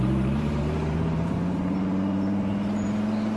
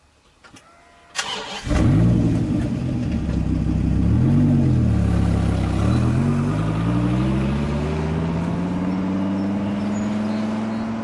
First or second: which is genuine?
second